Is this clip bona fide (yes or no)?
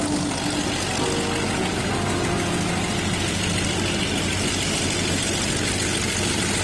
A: yes